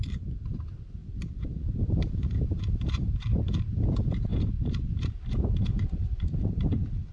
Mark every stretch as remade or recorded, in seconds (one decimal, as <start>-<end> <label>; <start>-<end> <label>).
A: 0.0-7.1 remade